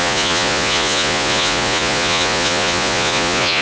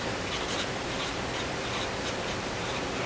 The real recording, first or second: second